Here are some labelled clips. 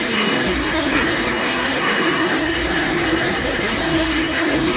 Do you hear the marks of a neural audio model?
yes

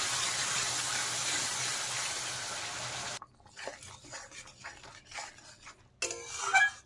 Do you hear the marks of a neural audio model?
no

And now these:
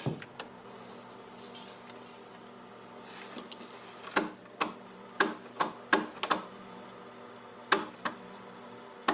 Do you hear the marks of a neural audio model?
no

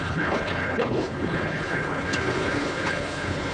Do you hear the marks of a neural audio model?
yes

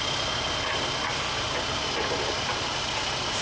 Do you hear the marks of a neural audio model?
no